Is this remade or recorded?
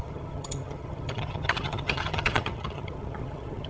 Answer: remade